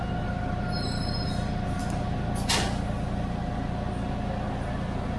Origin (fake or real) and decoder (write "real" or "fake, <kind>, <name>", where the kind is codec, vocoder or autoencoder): real